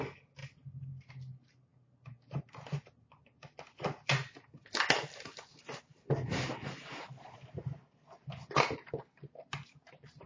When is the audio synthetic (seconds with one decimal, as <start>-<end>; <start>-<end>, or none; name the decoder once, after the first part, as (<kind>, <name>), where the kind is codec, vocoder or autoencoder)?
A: none